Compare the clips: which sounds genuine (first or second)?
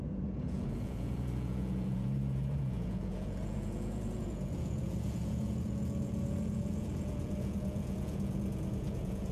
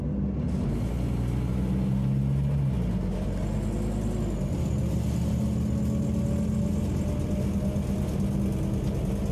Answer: second